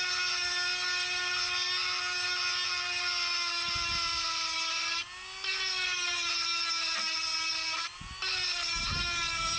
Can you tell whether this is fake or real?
real